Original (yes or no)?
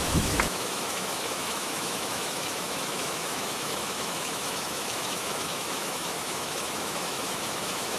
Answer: no